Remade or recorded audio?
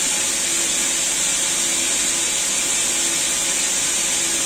recorded